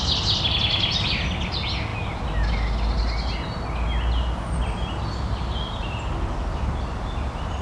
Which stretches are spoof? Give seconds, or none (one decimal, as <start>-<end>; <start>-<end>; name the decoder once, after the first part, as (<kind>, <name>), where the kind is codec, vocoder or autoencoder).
none